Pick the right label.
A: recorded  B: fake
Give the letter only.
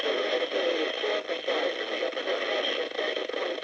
A